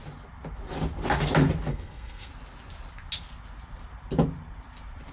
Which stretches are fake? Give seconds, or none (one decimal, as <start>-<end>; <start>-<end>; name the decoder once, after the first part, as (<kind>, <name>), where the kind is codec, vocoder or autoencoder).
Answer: 1.7-2.3 (codec, SNAC)

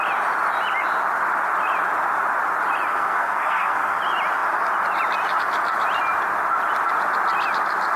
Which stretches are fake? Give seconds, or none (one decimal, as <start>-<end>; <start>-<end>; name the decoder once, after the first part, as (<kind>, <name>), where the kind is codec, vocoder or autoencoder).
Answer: 2.9-4.0 (codec, SNAC)